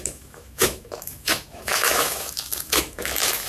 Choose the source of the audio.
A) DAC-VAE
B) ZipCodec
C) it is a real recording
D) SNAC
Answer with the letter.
A